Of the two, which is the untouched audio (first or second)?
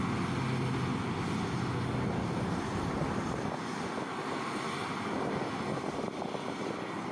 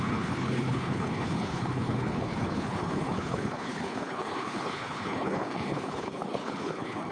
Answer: first